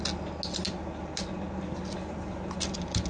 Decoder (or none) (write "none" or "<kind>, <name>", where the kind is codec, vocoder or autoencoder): none